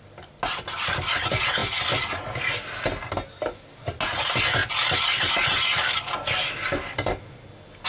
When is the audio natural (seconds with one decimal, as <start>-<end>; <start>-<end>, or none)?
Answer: 0.0-7.9